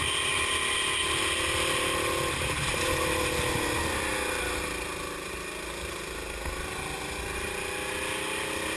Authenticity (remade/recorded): recorded